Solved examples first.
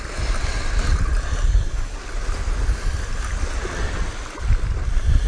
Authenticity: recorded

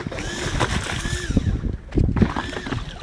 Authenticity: recorded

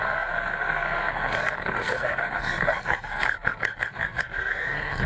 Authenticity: remade